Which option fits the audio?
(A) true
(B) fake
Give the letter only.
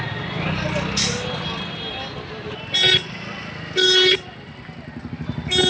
A